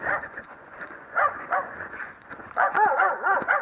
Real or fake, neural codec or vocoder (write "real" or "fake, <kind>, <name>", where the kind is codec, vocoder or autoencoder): fake, vocoder, Vocos